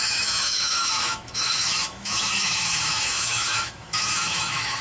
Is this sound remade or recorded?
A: remade